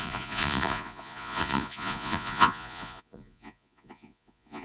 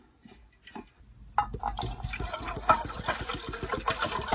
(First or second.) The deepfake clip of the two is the first